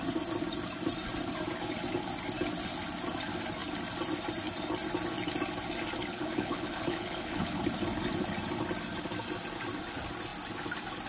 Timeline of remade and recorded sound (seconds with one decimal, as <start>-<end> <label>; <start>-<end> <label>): 0.0-6.1 recorded; 6.1-7.6 remade; 7.6-11.1 recorded